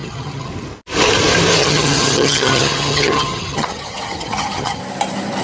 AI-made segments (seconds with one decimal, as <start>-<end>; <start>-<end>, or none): 0.0-0.5; 1.6-4.8